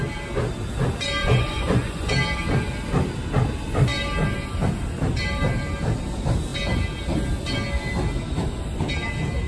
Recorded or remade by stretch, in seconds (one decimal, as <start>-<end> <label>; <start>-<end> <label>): 0.0-1.2 recorded; 1.2-2.1 remade; 2.1-9.5 recorded